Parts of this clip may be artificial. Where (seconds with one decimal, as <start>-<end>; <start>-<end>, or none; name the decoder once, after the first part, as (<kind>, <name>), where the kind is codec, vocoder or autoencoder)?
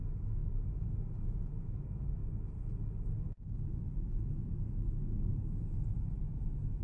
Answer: none